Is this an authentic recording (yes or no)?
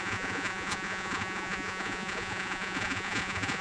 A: no